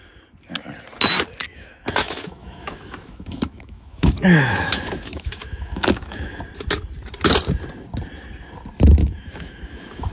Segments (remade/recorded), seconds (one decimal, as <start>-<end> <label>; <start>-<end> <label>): 0.0-1.5 recorded; 1.5-6.4 remade; 6.4-9.0 recorded; 9.0-10.1 remade